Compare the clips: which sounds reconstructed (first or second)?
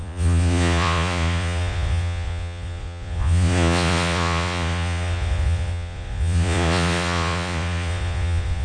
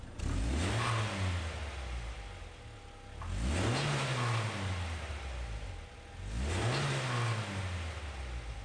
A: first